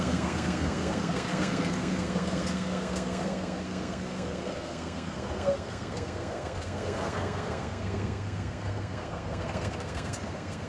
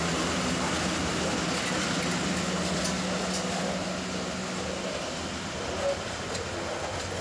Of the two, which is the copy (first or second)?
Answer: first